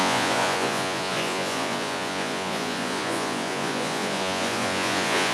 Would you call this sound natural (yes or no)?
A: no